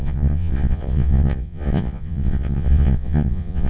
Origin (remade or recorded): remade